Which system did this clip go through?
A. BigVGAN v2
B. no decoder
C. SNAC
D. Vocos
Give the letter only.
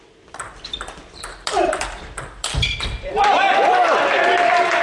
A